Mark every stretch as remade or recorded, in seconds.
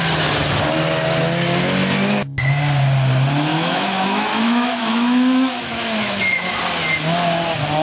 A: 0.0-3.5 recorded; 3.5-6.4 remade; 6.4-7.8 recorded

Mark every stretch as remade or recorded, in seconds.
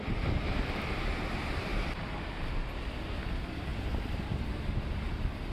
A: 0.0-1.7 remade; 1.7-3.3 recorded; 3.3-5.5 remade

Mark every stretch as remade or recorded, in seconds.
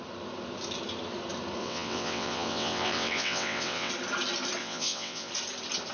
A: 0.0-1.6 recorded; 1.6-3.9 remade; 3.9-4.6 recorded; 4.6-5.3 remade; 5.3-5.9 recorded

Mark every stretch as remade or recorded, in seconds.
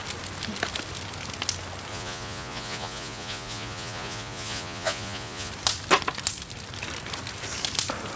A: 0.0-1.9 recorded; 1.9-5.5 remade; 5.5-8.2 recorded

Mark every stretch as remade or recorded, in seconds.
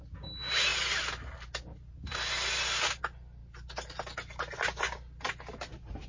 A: 0.0-6.1 recorded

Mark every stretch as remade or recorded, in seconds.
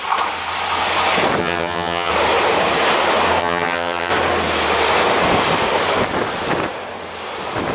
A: 0.0-1.4 recorded; 1.4-2.1 remade; 2.1-3.4 recorded; 3.4-4.1 remade; 4.1-7.7 recorded